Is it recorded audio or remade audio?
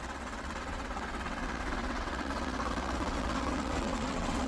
remade